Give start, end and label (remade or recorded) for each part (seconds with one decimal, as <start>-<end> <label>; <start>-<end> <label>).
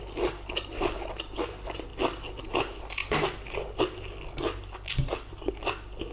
0.0-6.1 recorded